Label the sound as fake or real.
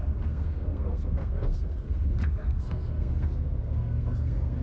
fake